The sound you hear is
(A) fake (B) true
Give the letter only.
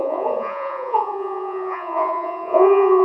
A